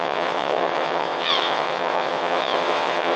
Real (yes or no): no